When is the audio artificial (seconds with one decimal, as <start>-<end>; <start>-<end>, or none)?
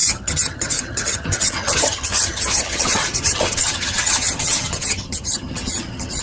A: 0.0-6.2